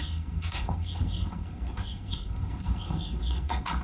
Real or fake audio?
fake